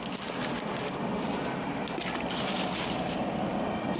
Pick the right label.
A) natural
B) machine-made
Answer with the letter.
A